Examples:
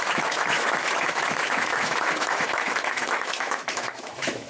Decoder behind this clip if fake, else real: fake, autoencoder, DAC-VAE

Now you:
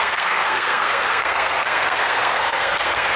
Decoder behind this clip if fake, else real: fake, codec, SNAC